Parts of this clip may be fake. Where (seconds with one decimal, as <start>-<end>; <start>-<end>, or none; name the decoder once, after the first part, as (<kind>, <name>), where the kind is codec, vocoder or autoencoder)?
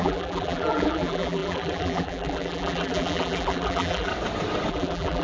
0.0-4.1 (vocoder, BigVGAN v2); 4.7-5.2